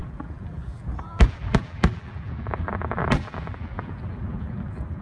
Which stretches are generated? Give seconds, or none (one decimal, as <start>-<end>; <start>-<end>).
0.0-5.0